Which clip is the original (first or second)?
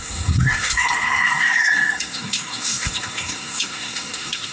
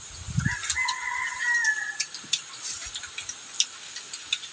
second